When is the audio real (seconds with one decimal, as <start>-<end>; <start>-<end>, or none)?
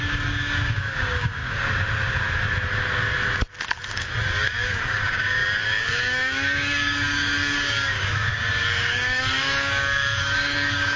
1.4-3.9